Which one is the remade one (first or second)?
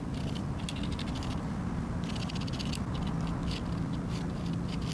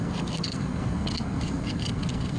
second